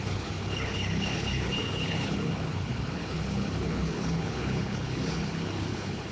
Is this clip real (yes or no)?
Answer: no